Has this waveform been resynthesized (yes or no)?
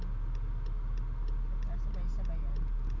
no